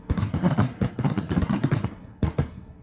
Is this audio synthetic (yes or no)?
yes